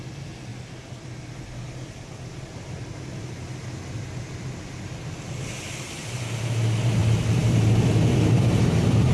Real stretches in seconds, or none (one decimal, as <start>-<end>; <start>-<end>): 0.0-9.1